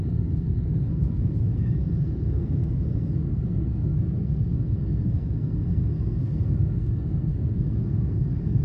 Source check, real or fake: fake